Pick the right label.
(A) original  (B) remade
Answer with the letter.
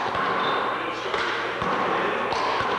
A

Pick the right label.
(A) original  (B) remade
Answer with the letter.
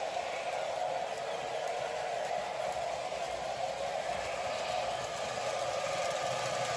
A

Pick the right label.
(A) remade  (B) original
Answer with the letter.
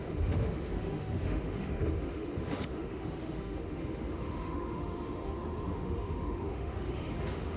A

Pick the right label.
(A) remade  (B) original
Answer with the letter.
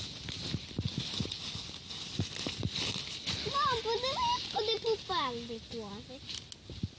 B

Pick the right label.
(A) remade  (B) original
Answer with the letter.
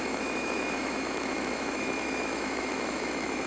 A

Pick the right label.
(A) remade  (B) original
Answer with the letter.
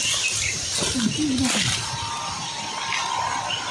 B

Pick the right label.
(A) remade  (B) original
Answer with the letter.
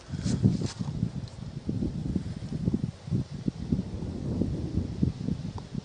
B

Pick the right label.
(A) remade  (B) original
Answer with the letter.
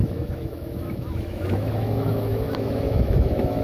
A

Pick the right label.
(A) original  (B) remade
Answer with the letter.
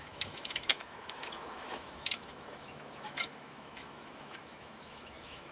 B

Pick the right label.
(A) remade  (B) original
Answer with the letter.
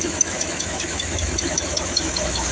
A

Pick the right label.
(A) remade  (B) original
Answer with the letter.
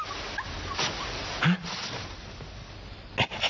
B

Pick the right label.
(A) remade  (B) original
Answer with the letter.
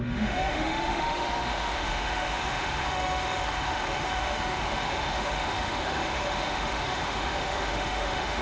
A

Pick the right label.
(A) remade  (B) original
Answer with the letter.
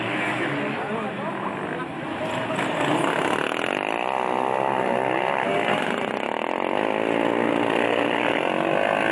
B